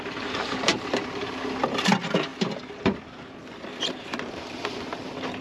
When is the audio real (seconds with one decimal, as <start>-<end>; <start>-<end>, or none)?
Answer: 2.3-4.2